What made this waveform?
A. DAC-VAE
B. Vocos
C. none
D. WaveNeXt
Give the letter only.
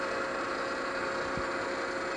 C